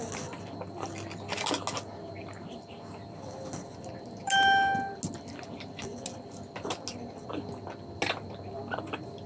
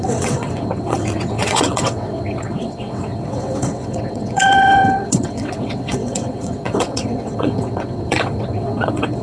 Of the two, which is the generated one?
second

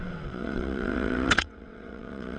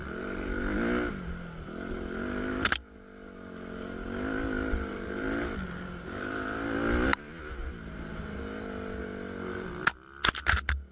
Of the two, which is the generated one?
first